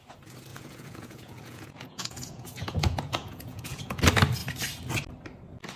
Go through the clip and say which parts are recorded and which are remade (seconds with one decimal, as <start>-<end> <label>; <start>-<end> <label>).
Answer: 0.0-0.5 recorded; 0.5-4.0 remade; 4.0-5.8 recorded

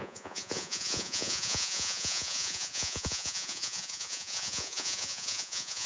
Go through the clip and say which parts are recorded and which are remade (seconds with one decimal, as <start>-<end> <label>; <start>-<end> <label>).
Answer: 0.0-5.9 remade

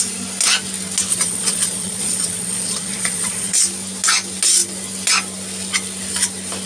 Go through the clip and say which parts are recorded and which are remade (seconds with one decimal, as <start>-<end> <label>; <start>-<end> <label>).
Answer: 0.0-1.1 recorded; 1.1-3.6 remade; 3.6-6.7 recorded

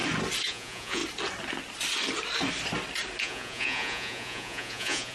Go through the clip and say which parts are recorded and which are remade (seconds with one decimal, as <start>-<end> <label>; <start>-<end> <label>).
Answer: 0.0-0.5 recorded; 0.5-1.0 remade; 1.0-3.2 recorded; 3.2-5.1 remade

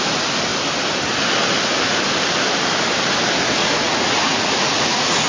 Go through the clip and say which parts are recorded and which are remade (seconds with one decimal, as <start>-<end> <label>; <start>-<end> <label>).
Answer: 0.0-3.6 recorded; 3.6-5.3 remade

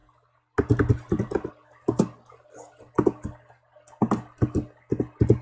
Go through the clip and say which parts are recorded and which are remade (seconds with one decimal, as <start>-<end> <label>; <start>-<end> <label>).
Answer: 0.0-5.4 recorded